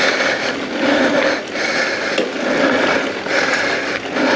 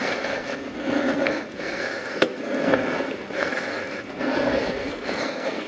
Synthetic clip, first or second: second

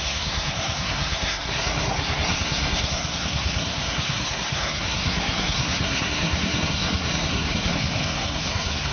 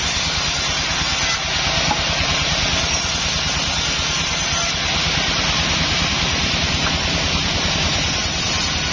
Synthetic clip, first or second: first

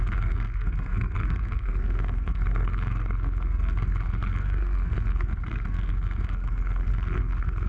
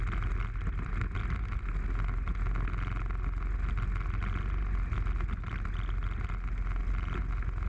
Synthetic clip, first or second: first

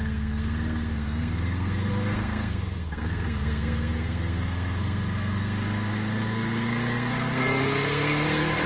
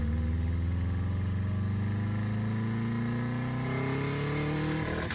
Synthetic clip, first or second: first